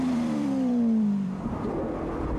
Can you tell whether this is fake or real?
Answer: fake